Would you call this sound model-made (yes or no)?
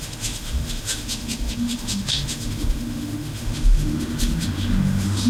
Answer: yes